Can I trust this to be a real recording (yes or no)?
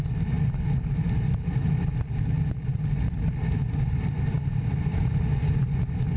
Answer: yes